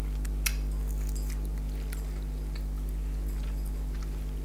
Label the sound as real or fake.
real